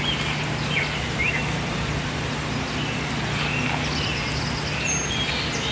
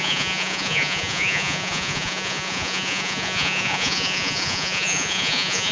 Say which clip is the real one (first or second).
first